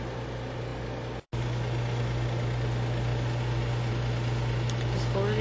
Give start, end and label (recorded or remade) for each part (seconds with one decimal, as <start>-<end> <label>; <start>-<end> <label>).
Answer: 0.0-5.4 recorded